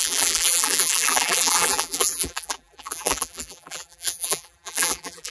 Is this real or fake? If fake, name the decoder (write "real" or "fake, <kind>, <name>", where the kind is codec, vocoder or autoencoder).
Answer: fake, vocoder, BigVGAN v2